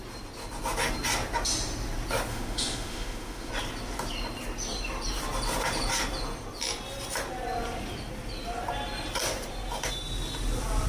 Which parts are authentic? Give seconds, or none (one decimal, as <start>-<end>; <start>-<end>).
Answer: 0.0-2.3; 3.5-10.9